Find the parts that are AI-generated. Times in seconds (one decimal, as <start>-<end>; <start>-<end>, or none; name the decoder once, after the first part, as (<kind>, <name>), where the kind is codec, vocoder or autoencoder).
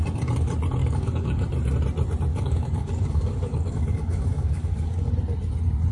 0.8-1.4 (codec, DAC); 2.3-5.1